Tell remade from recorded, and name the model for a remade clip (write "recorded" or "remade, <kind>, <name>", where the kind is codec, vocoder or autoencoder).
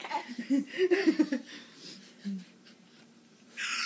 remade, vocoder, BigVGAN v2